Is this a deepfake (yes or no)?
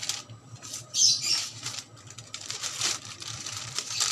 no